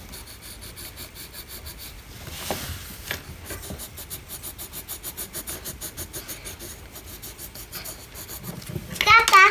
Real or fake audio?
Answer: real